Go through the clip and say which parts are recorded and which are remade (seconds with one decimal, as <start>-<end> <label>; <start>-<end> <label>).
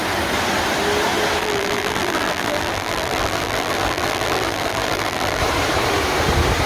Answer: 0.0-1.4 recorded; 1.4-5.4 remade; 5.4-6.7 recorded